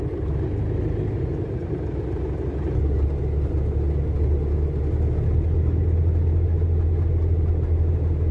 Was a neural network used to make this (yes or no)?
no